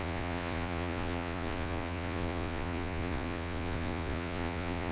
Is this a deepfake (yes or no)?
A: yes